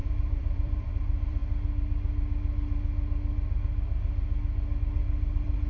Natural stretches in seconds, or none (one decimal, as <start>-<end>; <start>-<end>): 1.4-4.8